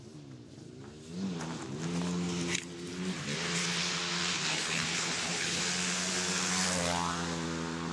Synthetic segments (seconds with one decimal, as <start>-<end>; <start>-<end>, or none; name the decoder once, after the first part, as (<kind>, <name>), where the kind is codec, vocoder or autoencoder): 4.5-5.6 (codec, HILCodec)